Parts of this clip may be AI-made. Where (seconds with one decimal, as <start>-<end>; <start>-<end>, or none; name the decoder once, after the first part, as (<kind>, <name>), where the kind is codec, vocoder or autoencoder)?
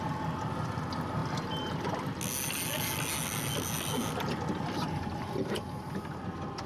none